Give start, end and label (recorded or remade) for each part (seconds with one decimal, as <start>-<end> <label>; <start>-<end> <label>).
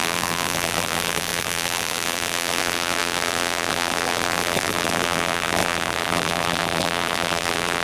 0.0-7.8 remade